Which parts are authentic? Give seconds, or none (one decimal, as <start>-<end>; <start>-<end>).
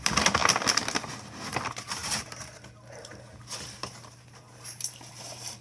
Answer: 0.0-2.0